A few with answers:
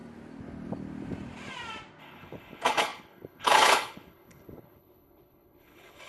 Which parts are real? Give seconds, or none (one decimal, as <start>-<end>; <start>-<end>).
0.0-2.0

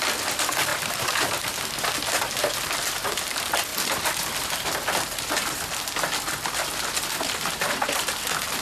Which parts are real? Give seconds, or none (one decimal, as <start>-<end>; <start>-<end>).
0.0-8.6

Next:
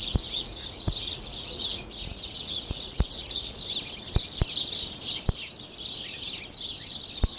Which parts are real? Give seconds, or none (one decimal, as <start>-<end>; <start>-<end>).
3.6-7.4